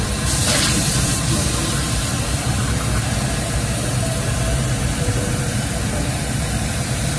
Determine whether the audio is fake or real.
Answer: fake